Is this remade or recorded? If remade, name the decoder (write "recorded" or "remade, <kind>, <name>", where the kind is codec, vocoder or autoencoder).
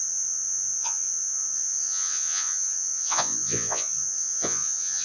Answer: remade, vocoder, Vocos